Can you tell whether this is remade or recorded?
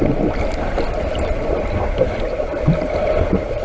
remade